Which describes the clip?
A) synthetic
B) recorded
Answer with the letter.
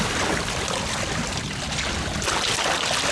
B